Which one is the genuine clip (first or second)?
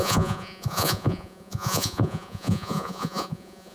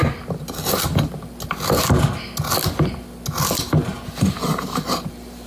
second